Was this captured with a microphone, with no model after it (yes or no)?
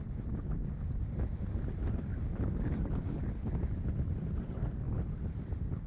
yes